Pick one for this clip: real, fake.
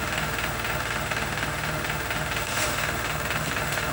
fake